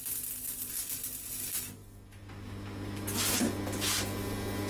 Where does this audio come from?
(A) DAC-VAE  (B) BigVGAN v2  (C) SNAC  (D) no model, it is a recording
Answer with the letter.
D